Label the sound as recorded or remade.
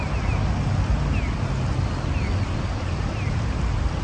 recorded